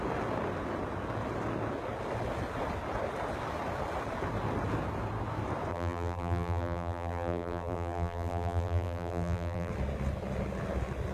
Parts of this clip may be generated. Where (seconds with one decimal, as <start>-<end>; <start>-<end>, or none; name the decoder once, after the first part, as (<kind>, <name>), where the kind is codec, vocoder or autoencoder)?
5.7-9.7 (vocoder, BigVGAN v2)